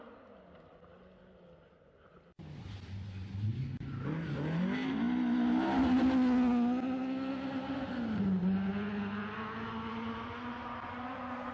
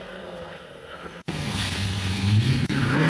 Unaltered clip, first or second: first